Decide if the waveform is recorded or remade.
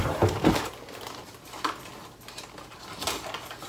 recorded